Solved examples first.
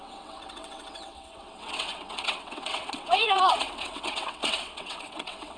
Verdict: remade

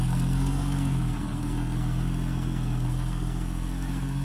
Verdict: remade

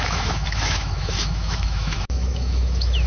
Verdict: remade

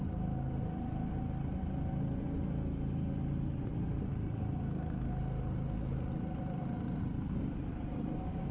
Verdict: recorded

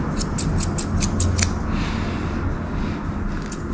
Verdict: recorded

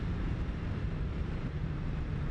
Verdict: remade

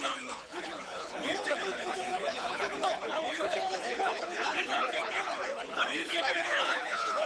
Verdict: remade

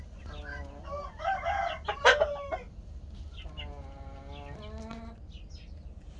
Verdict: recorded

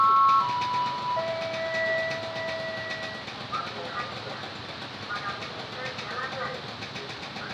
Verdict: recorded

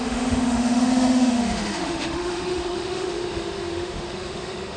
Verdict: remade